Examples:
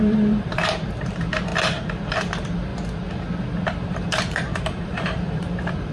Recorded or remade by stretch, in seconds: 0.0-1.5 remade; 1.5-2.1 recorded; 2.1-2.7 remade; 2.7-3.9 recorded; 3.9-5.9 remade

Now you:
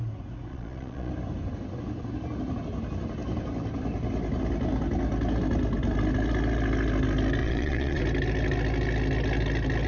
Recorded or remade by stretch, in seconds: 0.0-0.5 recorded; 0.5-1.1 remade; 1.1-7.4 recorded; 7.4-8.0 remade; 8.0-9.9 recorded

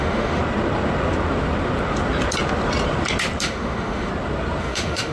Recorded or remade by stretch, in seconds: 0.0-0.4 remade; 0.4-3.4 recorded; 3.4-4.1 remade; 4.1-4.6 recorded; 4.6-5.1 remade

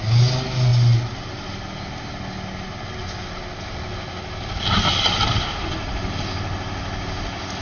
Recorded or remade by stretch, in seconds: 0.0-7.6 recorded